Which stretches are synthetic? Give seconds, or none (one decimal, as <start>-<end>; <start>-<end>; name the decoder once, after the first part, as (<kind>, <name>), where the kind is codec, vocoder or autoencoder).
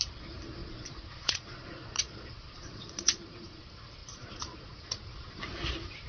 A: 0.6-3.6 (vocoder, Vocos); 4.0-5.4